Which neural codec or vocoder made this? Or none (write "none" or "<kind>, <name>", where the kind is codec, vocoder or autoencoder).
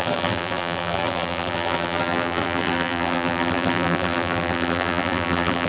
vocoder, BigVGAN v2